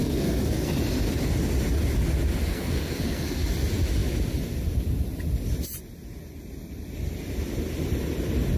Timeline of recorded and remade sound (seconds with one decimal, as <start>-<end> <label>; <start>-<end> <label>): 0.0-0.7 remade; 0.7-2.5 recorded; 2.5-3.4 remade; 3.4-8.6 recorded